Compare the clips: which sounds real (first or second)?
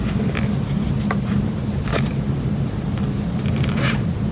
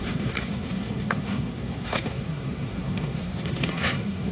first